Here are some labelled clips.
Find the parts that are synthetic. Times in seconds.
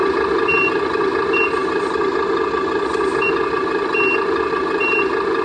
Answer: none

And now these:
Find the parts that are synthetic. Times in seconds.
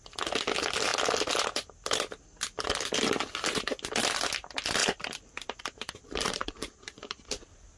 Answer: 4.8-7.8 (vocoder, BigVGAN v2)